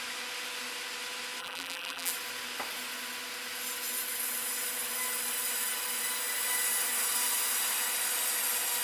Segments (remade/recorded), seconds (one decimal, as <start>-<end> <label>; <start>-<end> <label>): 0.0-1.4 recorded; 1.4-2.1 remade; 2.1-8.8 recorded